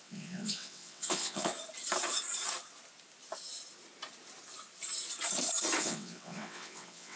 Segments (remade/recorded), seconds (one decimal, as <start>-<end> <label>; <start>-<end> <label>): 0.0-1.5 remade; 1.5-5.8 recorded; 5.8-7.2 remade